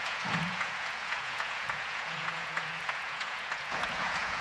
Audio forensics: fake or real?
fake